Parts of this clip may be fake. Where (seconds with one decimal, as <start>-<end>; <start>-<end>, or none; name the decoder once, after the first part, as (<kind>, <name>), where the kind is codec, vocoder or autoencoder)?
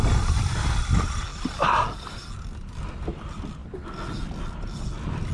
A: none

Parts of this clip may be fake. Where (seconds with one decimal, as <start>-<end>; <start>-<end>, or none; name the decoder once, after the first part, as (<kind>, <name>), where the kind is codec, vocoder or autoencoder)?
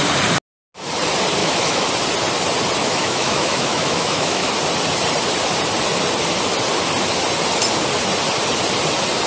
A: 1.4-1.9 (autoencoder, DAC-VAE); 2.8-4.5